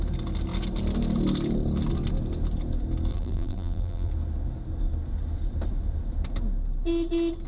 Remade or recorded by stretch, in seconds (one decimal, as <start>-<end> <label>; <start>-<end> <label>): 0.0-3.1 recorded; 3.1-4.1 remade; 4.1-7.5 recorded